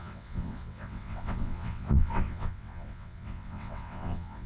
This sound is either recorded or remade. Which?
remade